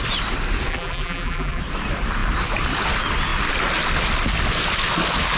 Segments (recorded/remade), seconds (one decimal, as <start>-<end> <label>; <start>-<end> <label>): 0.0-0.7 recorded; 0.7-1.6 remade; 1.6-5.4 recorded